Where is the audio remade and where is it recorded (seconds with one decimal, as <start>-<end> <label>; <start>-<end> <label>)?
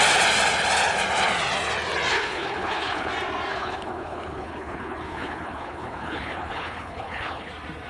0.0-2.1 recorded; 2.1-3.1 remade; 3.1-3.5 recorded; 3.5-7.5 remade; 7.5-7.9 recorded